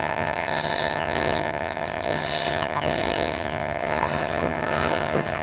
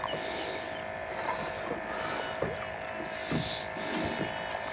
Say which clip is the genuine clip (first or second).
second